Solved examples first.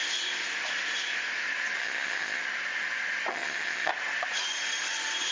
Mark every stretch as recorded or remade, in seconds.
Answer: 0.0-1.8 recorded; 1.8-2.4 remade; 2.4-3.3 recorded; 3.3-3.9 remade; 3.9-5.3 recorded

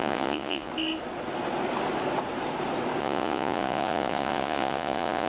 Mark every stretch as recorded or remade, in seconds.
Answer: 0.0-0.7 remade; 0.7-3.0 recorded; 3.0-5.3 remade

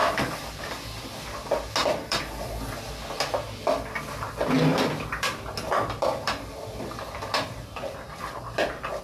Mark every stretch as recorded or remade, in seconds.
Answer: 0.0-0.6 remade; 0.6-1.8 recorded; 1.8-2.7 remade; 2.7-4.7 recorded; 4.7-9.0 remade

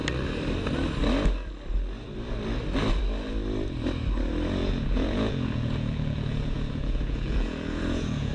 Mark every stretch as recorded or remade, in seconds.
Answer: 0.0-4.6 recorded; 4.6-8.3 remade